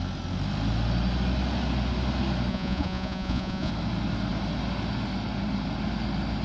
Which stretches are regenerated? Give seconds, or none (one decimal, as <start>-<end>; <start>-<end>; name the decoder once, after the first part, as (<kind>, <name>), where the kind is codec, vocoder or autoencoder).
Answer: 2.5-3.7 (vocoder, Vocos)